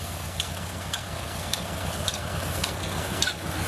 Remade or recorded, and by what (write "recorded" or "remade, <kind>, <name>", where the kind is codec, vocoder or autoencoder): remade, codec, SNAC